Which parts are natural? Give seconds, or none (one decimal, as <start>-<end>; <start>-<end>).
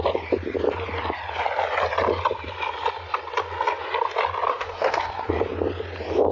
0.0-4.5; 5.3-6.3